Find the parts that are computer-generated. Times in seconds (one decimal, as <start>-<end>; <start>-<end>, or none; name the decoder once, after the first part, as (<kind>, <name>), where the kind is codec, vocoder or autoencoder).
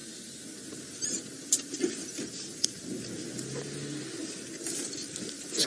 0.0-3.1 (vocoder, BigVGAN v2)